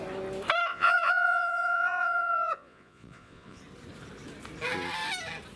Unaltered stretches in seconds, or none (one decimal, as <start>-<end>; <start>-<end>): 0.0-0.7; 3.6-5.6

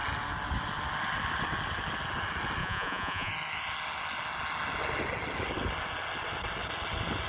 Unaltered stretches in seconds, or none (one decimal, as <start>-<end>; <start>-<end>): 0.0-2.6; 3.3-7.3

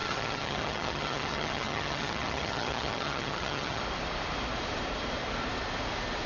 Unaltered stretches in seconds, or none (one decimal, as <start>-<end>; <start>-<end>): 3.8-6.3

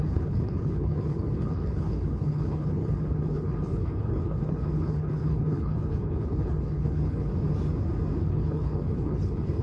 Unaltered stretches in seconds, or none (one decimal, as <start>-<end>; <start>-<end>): 7.3-8.2

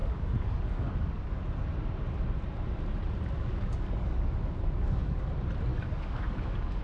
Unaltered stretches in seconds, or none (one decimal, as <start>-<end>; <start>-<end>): 1.4-3.4; 5.3-5.7